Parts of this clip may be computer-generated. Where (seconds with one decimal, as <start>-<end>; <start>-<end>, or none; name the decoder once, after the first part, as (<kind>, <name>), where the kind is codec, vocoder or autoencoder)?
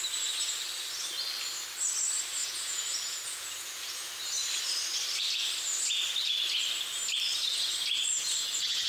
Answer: 2.4-4.1 (vocoder, Vocos); 8.1-8.9